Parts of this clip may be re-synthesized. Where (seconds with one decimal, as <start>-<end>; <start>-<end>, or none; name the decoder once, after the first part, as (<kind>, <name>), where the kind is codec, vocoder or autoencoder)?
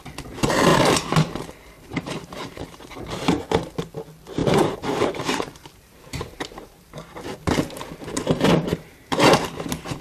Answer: 0.7-1.2 (vocoder, BigVGAN v2); 1.6-3.4; 4.4-9.2